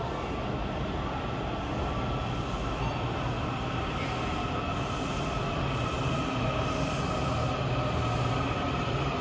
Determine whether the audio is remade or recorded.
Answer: recorded